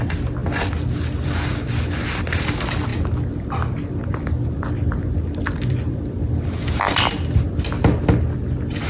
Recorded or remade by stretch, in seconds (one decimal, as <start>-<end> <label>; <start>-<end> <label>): 0.0-0.4 recorded; 0.4-2.0 remade; 2.0-2.9 recorded; 2.9-7.1 remade; 7.1-8.9 recorded